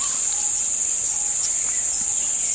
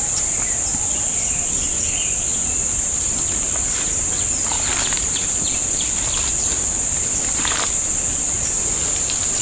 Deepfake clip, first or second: second